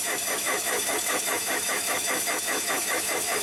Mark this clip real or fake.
fake